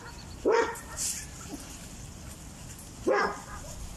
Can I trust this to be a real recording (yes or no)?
yes